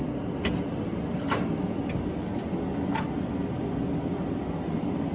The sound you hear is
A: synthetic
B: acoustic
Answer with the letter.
B